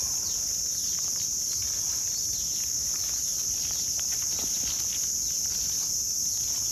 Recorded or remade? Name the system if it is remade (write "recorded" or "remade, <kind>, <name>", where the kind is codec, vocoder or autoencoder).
recorded